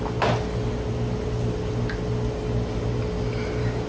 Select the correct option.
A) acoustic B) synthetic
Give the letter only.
A